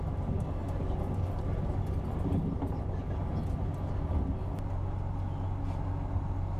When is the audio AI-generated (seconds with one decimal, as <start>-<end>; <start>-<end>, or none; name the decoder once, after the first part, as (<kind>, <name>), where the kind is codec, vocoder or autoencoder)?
none